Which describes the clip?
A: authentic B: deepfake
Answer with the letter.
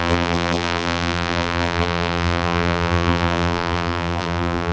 B